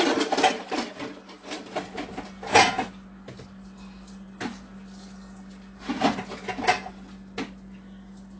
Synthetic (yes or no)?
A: no